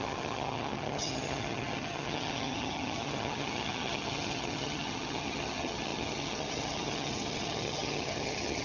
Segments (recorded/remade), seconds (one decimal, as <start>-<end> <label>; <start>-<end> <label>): 0.0-8.6 remade